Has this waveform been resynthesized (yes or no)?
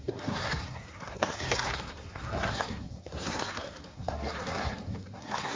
yes